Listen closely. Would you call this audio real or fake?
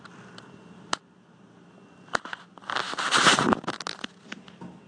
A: real